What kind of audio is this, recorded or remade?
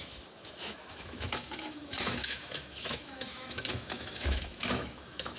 remade